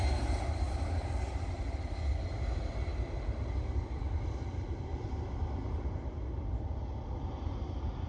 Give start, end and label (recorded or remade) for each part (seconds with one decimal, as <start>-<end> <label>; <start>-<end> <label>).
0.0-8.1 recorded